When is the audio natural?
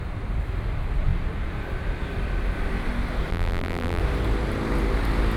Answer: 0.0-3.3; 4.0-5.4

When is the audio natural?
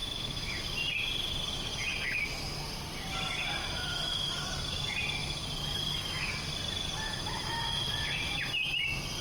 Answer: 0.6-3.6; 4.3-5.2; 6.3-7.1; 8.4-9.2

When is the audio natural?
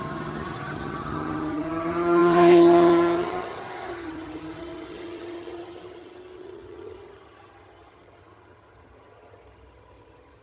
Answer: none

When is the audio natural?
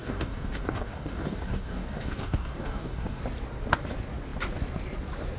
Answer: 3.2-5.4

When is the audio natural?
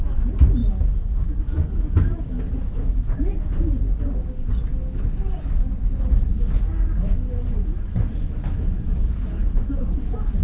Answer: 0.0-0.6; 3.4-6.3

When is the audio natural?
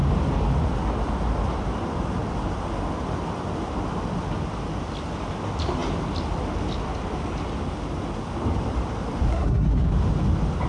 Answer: 0.0-9.3; 9.9-10.7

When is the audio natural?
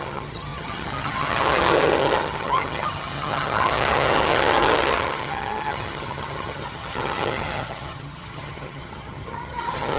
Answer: none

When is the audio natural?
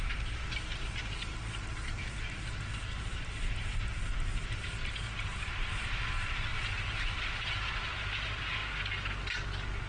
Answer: 8.6-9.9